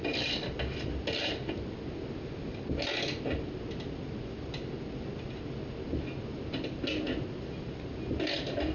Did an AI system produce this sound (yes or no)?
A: no